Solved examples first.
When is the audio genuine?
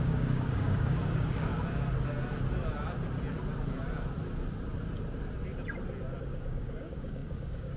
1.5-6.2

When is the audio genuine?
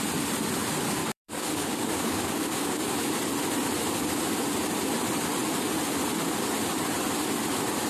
0.0-1.0; 2.8-7.9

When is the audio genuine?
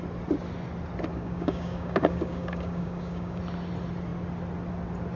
0.0-1.1; 3.4-5.2